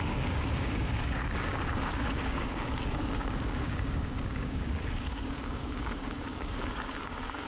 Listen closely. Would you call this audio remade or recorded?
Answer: remade